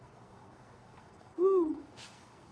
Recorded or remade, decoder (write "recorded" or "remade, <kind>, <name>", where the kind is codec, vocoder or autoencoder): remade, codec, SNAC